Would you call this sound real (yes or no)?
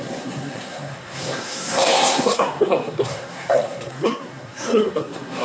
no